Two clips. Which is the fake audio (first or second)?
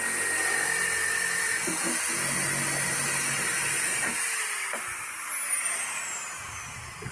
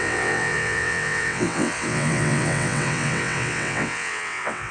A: second